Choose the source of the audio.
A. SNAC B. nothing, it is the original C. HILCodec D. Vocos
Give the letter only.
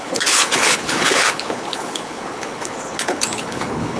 C